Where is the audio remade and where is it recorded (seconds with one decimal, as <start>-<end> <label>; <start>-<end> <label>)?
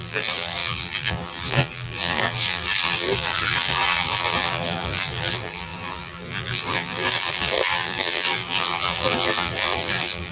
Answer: 0.0-10.3 remade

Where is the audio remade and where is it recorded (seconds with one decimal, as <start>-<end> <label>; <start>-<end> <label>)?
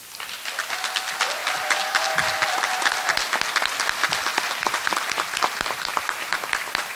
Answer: 0.0-4.3 recorded; 4.3-6.4 remade; 6.4-7.0 recorded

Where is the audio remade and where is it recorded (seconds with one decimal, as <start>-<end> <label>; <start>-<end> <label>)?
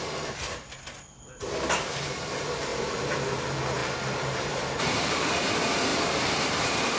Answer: 0.0-2.7 recorded; 2.7-3.3 remade; 3.3-3.8 recorded; 3.8-5.5 remade; 5.5-5.9 recorded; 5.9-7.0 remade